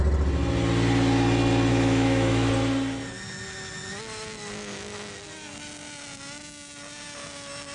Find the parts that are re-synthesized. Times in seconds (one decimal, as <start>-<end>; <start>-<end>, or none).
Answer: 1.7-2.5